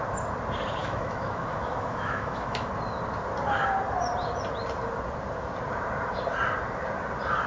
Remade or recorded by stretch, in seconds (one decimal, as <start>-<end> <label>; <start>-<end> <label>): 0.0-0.8 recorded; 0.8-2.7 remade; 2.7-7.5 recorded